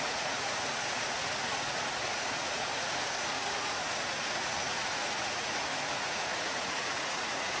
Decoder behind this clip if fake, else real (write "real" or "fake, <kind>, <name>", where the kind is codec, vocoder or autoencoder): fake, vocoder, Vocos